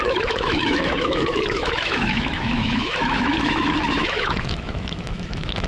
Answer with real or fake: fake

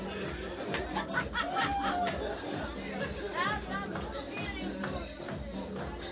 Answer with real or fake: real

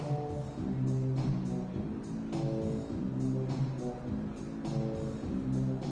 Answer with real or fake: real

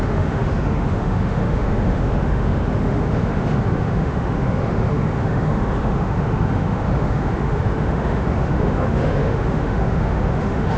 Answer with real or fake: fake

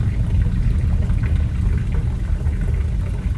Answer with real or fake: real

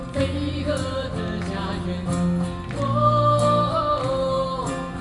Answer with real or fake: real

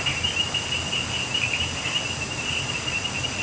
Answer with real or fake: real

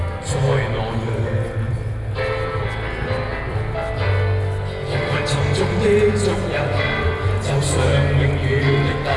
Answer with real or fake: real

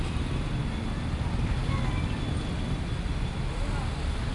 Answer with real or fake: real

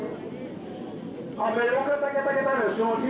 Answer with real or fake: real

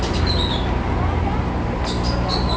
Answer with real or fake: real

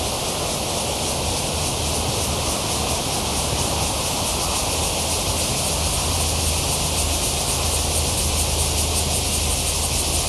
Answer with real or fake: real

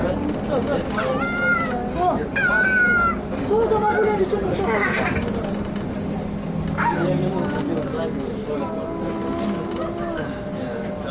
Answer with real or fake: real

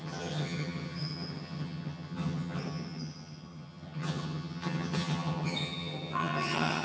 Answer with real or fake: fake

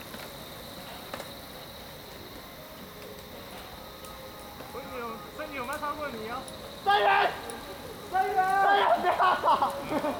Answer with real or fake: real